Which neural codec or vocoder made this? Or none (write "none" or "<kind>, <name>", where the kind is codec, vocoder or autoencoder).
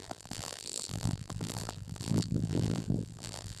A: vocoder, BigVGAN v2